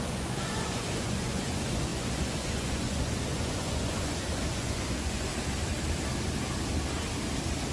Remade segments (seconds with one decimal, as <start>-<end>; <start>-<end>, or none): 0.0-5.3